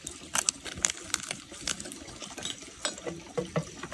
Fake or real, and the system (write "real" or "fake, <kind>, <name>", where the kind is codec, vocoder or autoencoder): real